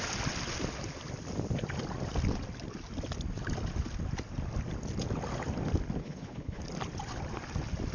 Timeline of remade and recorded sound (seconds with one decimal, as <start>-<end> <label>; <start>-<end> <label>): 0.0-6.0 recorded; 6.0-6.6 remade; 6.6-7.9 recorded